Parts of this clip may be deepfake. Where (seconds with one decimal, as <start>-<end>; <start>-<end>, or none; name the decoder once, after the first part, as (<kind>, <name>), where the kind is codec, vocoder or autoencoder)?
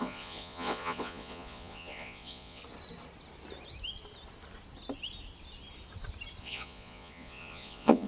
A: 0.0-2.6 (vocoder, Vocos); 6.4-8.1